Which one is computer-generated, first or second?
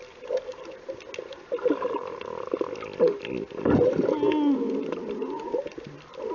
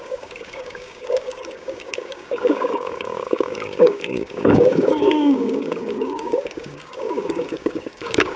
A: second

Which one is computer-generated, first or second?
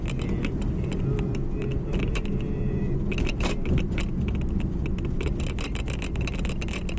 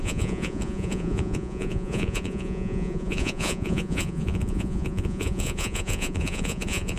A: second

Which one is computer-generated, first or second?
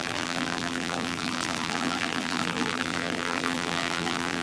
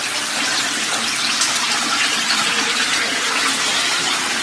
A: first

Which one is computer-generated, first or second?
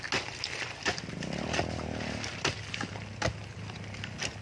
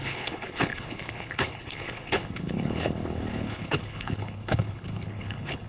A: second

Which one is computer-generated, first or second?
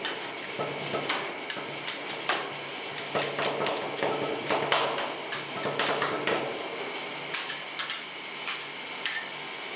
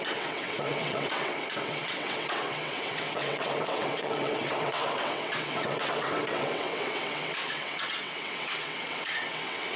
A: second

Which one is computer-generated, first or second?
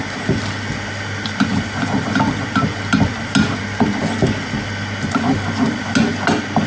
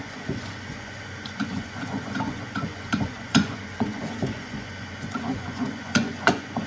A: second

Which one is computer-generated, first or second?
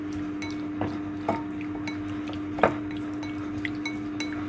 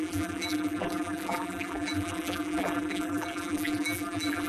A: second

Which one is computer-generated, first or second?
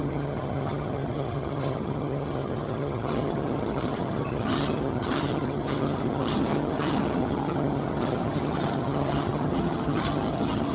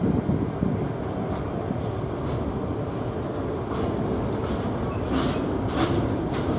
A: first